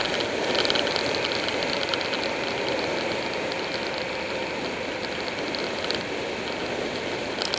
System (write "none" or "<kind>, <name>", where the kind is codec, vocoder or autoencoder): none